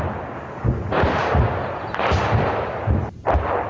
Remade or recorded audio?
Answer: recorded